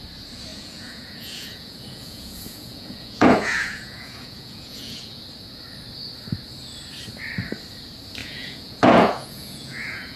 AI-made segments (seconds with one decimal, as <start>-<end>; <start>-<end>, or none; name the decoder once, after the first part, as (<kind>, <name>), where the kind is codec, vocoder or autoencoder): 0.5-5.2 (vocoder, Vocos); 8.2-10.2